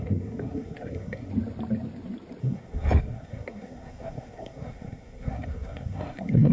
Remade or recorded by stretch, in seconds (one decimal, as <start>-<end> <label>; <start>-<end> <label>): 0.0-1.3 remade; 1.3-2.4 recorded; 2.4-6.5 remade